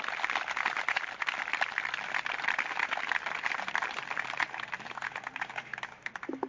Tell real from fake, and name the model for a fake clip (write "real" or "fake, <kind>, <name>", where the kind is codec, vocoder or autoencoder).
real